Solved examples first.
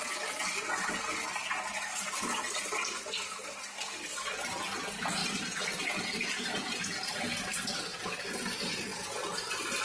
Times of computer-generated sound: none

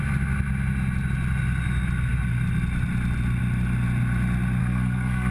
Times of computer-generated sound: 4.6-5.3 (codec, SNAC)

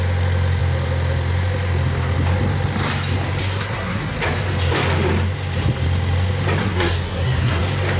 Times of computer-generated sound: 3.4-4.1 (codec, SNAC); 6.6-7.6

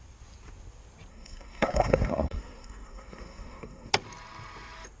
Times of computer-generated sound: 1.1-3.9 (codec, SNAC)

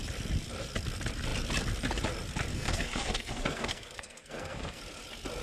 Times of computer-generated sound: 2.5-4.8 (codec, SNAC)

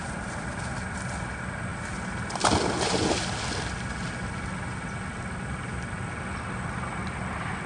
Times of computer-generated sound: none

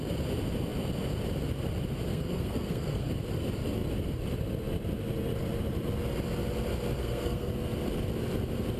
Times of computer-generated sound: 2.1-3.1 (codec, SNAC); 7.0-7.5

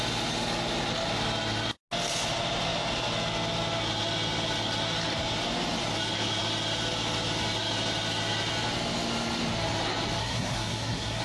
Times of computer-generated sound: 10.2-11.2 (codec, SNAC)